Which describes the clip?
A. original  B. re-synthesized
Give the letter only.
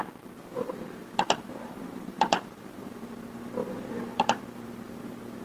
B